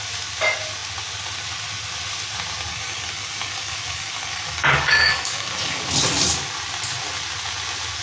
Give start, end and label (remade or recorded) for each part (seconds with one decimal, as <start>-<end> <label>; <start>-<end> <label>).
0.0-2.7 recorded; 2.7-5.8 remade; 5.8-8.0 recorded